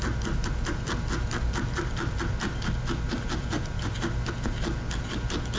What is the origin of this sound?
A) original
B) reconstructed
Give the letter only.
A